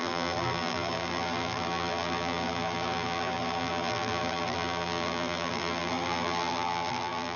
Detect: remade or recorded remade